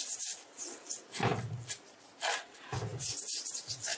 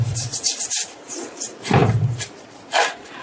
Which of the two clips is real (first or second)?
first